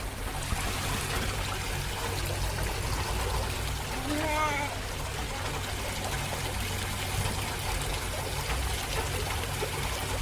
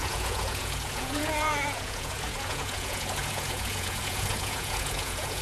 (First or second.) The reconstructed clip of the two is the second